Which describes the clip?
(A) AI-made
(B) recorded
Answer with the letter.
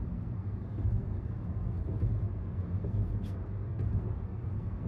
A